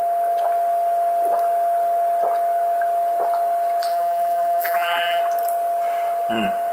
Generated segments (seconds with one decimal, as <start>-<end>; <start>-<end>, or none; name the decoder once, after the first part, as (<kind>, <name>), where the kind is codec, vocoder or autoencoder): 3.9-5.2 (vocoder, BigVGAN v2)